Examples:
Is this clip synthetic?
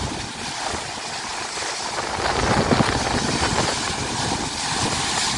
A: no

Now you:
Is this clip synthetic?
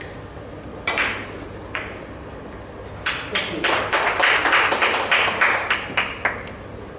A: no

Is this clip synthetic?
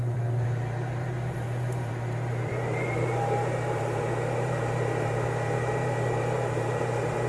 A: yes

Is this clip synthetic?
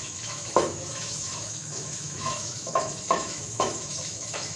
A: yes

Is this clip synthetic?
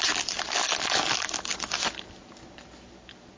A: no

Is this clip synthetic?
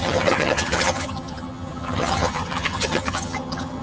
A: yes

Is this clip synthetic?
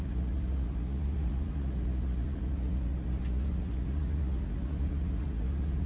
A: yes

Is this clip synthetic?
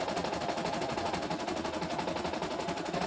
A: no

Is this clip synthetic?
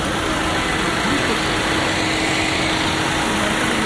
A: no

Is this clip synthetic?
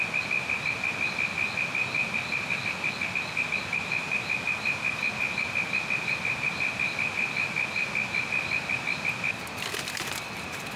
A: no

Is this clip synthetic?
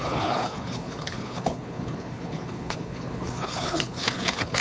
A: yes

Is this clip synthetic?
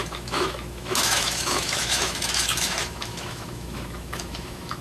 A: yes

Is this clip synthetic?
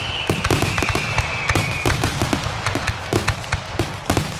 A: yes